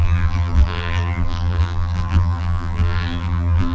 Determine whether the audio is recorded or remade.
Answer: remade